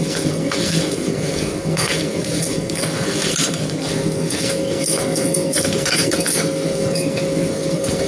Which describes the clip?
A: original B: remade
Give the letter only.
B